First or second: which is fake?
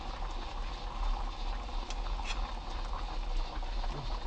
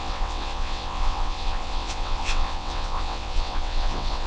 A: second